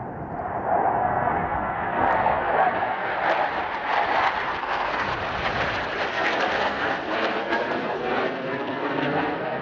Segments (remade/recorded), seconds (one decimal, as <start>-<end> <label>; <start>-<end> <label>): 0.0-0.9 recorded; 0.9-3.1 remade; 3.1-4.6 recorded; 4.6-5.1 remade; 5.1-6.1 recorded; 6.1-9.6 remade